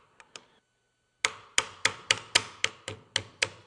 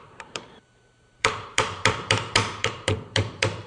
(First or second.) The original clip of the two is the first